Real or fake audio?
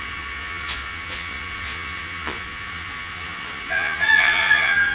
fake